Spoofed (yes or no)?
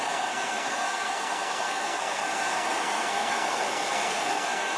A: yes